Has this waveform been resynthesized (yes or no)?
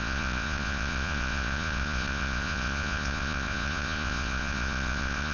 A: yes